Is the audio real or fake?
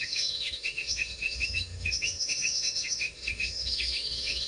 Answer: fake